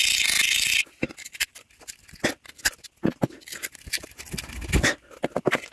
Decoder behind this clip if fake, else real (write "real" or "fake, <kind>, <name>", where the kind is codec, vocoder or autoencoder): real